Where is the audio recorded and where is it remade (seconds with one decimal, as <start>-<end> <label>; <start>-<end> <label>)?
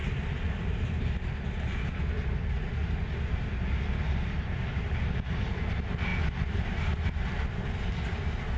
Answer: 0.0-8.6 recorded